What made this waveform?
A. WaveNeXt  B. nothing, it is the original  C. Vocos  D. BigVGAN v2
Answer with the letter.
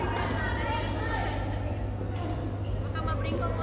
B